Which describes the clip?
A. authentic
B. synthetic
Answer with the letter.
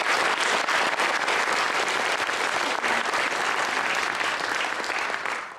A